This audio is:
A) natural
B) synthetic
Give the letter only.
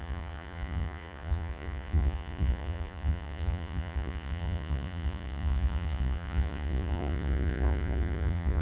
B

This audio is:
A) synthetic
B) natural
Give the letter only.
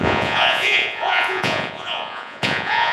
A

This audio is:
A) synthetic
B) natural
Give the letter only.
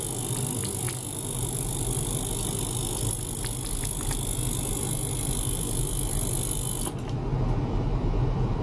B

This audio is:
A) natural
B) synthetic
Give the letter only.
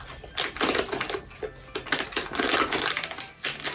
A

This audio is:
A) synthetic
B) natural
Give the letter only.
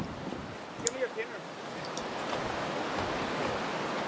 B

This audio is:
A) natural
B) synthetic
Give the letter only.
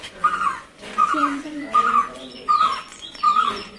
B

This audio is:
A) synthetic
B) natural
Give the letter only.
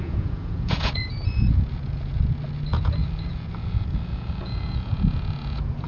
A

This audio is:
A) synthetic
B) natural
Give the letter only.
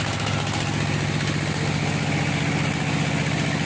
B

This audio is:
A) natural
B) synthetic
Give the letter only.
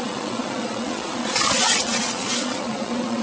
B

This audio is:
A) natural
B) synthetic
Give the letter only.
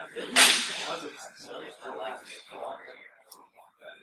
A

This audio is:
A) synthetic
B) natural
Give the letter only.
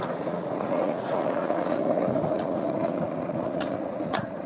A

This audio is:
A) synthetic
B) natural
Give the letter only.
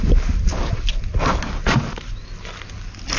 B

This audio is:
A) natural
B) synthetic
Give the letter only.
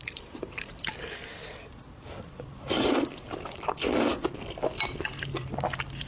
A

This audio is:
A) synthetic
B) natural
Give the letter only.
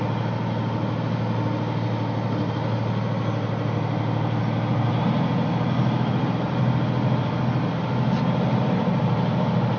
B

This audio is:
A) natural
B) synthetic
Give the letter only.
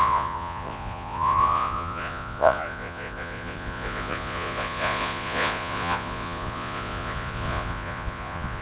B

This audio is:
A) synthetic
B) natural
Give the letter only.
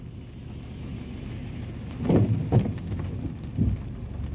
B